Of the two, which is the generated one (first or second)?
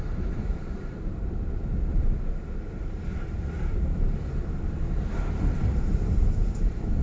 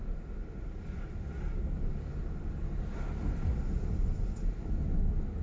first